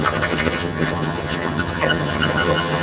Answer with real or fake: fake